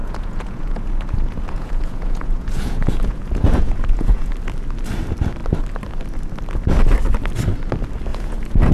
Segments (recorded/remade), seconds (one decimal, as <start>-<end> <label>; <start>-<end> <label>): 0.0-4.3 remade; 4.3-8.1 recorded; 8.1-8.7 remade